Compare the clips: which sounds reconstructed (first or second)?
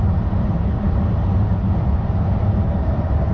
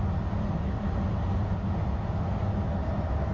first